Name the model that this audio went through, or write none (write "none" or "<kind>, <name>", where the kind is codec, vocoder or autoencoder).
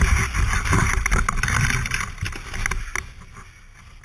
none